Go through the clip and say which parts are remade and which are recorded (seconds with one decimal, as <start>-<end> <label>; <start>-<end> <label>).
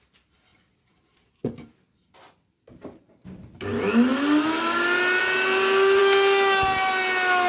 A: 0.0-0.5 recorded; 0.5-1.5 remade; 1.5-7.5 recorded